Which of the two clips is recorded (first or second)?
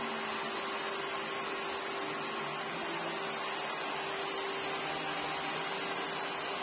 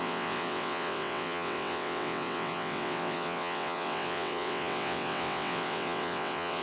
first